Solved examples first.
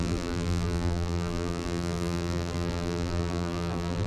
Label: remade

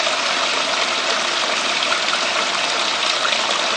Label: recorded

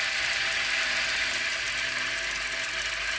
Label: recorded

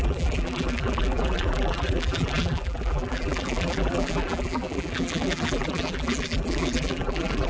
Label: remade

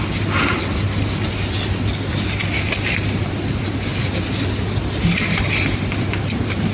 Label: recorded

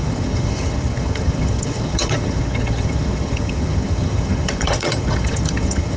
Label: remade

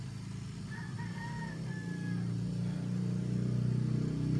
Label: recorded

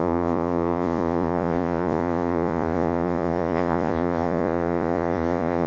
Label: remade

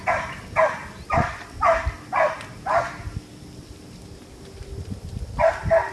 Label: recorded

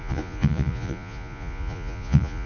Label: remade